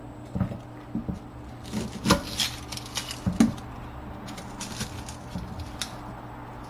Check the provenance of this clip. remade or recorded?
recorded